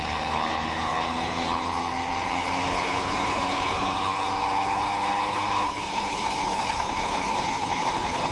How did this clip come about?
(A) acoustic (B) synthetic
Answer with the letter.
B